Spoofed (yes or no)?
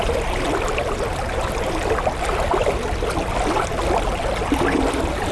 no